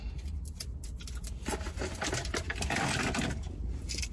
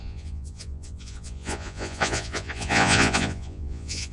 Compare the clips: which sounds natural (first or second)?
first